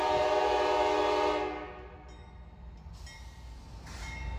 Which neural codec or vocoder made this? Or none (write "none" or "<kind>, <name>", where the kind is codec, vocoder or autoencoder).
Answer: none